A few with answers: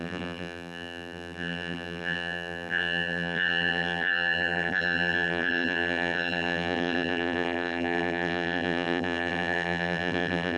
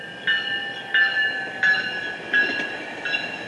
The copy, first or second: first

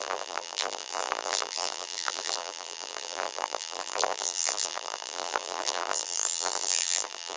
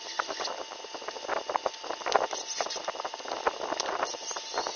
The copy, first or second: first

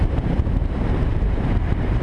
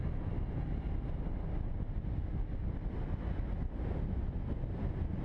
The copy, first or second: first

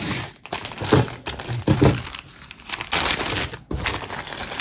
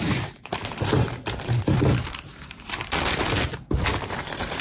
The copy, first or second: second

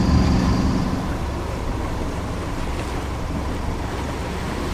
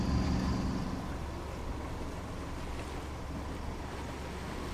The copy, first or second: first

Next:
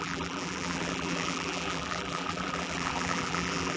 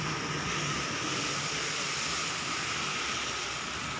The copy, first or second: first